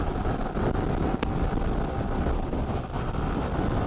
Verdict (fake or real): real